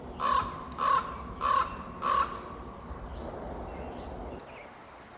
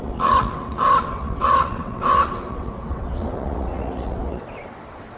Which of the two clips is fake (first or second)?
second